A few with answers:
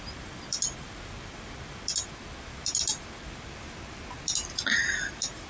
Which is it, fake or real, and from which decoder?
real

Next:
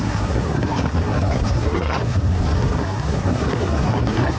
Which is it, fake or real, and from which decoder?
fake, codec, SNAC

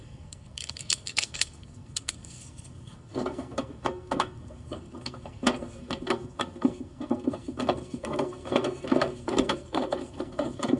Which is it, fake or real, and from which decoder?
fake, codec, SNAC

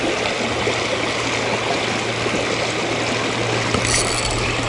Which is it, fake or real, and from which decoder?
real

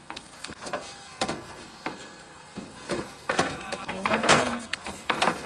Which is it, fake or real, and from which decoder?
fake, codec, SNAC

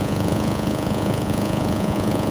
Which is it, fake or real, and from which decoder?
fake, vocoder, Vocos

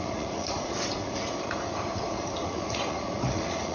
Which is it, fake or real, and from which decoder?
fake, vocoder, Vocos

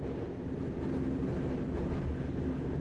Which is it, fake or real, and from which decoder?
real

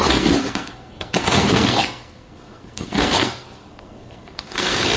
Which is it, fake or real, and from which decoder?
fake, codec, SNAC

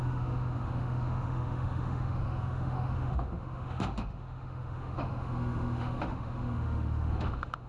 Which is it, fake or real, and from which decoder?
fake, autoencoder, DAC-VAE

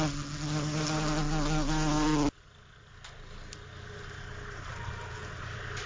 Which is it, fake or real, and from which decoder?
real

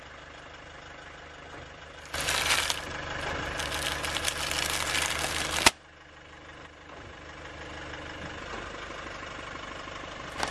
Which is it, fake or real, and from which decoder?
real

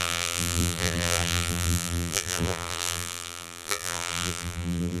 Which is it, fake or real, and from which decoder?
fake, vocoder, BigVGAN v2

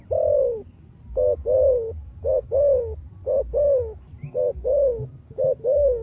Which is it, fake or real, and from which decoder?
real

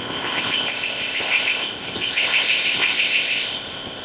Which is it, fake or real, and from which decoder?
fake, codec, ZipCodec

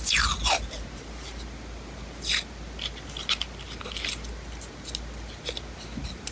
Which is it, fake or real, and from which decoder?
real